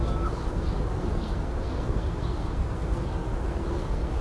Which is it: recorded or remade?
remade